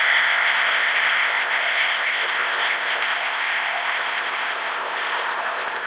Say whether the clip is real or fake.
fake